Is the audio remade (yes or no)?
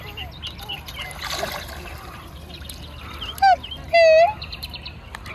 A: no